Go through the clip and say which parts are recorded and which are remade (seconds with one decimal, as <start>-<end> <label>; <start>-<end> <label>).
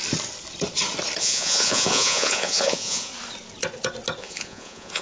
0.0-1.2 recorded; 1.2-3.1 remade; 3.1-4.2 recorded; 4.2-5.0 remade